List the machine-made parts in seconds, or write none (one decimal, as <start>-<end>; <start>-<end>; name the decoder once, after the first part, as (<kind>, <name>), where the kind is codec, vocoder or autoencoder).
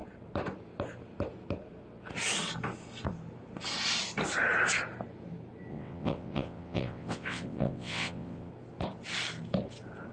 5.7-8.5 (vocoder, WaveNeXt)